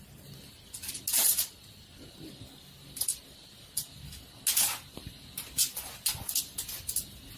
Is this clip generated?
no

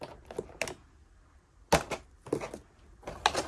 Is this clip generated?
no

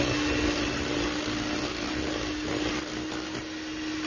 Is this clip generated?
no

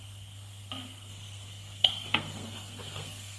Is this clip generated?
yes